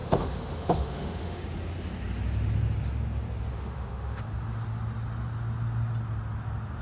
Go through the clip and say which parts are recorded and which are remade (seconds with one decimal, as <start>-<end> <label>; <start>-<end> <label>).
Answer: 0.0-1.4 remade; 1.4-3.5 recorded; 3.5-4.2 remade; 4.2-6.8 recorded